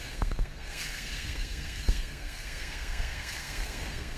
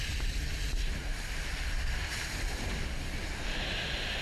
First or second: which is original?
second